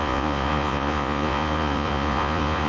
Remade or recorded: remade